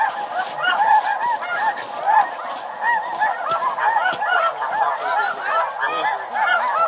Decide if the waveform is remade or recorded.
recorded